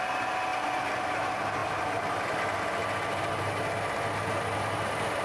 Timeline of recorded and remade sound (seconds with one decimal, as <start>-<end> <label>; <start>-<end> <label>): 0.0-5.2 recorded

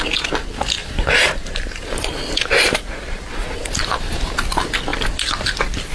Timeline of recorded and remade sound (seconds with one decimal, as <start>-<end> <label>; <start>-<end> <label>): 0.0-0.8 recorded; 0.8-4.3 remade; 4.3-5.9 recorded

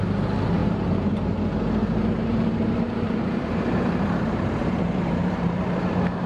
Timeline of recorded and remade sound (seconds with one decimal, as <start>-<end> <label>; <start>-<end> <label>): 0.0-0.6 recorded; 0.6-1.3 remade; 1.3-1.8 recorded; 1.8-5.6 remade; 5.6-6.3 recorded

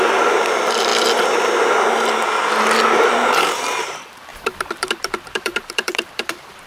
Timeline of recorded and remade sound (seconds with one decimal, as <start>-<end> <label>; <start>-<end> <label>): 0.0-0.9 remade; 0.9-3.0 recorded; 3.0-6.7 remade

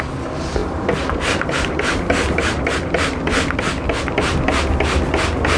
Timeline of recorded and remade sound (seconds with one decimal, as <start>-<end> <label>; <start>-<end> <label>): 0.0-5.6 recorded

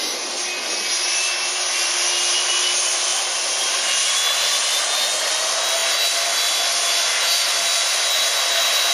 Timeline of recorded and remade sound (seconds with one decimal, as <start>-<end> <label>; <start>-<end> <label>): 0.0-3.1 recorded; 3.1-4.1 remade; 4.1-8.9 recorded

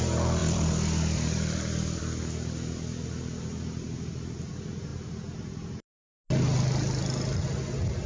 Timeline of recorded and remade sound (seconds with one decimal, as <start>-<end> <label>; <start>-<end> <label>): 0.0-0.4 recorded; 0.4-2.0 remade; 2.0-8.1 recorded

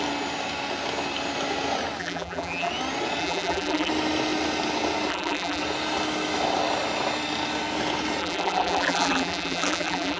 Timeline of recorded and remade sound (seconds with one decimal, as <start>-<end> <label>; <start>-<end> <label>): 0.0-2.0 recorded; 2.0-2.7 remade; 2.7-3.2 recorded; 3.2-3.9 remade; 3.9-5.1 recorded; 5.1-5.6 remade; 5.6-8.2 recorded; 8.2-10.2 remade